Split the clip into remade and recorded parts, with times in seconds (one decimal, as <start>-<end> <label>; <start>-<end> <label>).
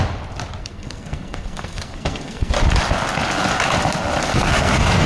0.0-0.6 recorded; 0.6-2.5 remade; 2.5-4.3 recorded; 4.3-5.1 remade